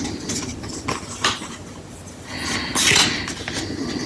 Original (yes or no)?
yes